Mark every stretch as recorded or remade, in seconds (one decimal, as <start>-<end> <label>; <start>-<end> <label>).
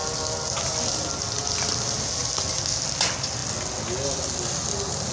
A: 0.0-5.1 recorded